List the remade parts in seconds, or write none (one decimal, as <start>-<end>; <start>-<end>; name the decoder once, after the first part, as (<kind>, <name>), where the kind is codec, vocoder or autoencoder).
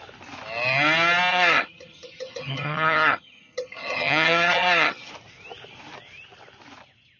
1.3-5.1 (vocoder, HiFi-GAN)